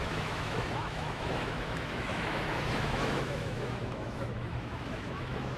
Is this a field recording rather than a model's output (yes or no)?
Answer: no